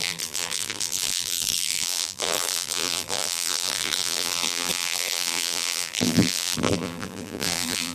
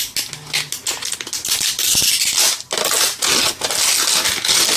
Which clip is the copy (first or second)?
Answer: first